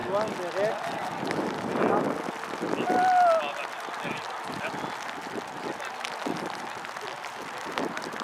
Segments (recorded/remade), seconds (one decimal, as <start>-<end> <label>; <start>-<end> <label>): 0.0-8.2 recorded